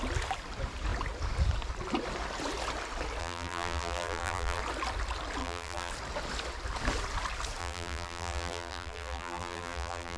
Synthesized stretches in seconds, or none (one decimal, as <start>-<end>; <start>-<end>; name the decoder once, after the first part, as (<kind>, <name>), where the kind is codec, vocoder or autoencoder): 3.2-4.6 (vocoder, BigVGAN v2); 5.4-5.9; 7.6-10.2